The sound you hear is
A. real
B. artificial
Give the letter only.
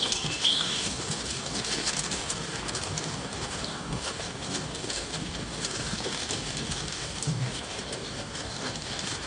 B